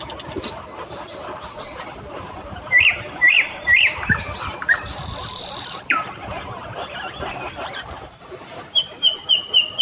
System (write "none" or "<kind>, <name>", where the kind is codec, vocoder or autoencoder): vocoder, BigVGAN v2